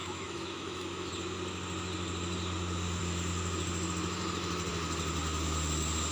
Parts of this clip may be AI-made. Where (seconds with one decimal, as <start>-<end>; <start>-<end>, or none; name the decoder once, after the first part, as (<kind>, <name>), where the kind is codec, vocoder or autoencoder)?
0.0-1.1 (autoencoder, DAC-VAE)